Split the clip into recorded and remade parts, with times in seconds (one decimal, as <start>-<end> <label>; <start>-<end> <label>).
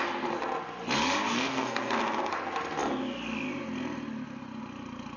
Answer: 0.0-1.3 recorded; 1.3-2.0 remade; 2.0-5.2 recorded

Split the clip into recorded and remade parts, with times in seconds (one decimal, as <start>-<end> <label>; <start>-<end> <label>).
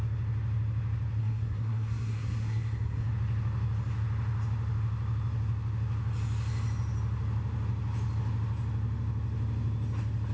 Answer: 0.0-1.2 recorded; 1.2-3.1 remade; 3.1-10.3 recorded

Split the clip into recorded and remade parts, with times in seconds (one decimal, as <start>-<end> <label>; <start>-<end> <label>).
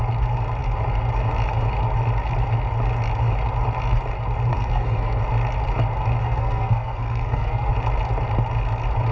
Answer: 0.0-4.5 recorded; 4.5-5.2 remade; 5.2-6.2 recorded; 6.2-7.7 remade; 7.7-9.1 recorded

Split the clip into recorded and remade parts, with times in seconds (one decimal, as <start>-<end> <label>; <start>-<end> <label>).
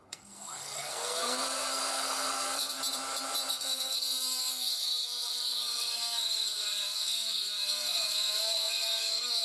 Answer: 0.0-2.8 remade; 2.8-3.5 recorded; 3.5-9.4 remade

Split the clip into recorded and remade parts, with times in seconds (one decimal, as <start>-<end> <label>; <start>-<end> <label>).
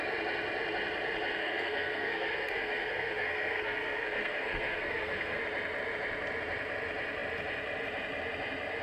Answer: 0.0-1.4 recorded; 1.4-5.4 remade; 5.4-8.8 recorded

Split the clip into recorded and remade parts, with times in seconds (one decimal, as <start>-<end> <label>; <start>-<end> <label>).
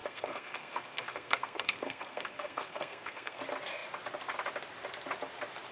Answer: 0.0-3.4 remade; 3.4-5.7 recorded